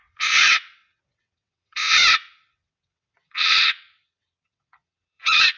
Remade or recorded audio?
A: remade